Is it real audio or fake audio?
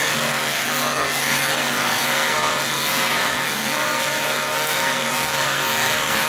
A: fake